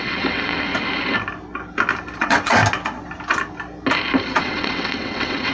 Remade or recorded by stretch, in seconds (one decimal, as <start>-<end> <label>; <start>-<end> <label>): 0.0-0.7 remade; 0.7-2.2 recorded; 2.2-2.6 remade; 2.6-4.4 recorded; 4.4-5.5 remade